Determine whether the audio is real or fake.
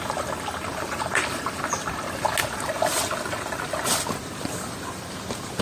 real